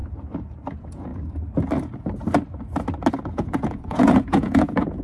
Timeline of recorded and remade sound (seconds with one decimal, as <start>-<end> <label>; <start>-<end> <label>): 0.0-0.7 recorded; 0.7-1.1 remade; 1.1-3.1 recorded; 3.1-5.0 remade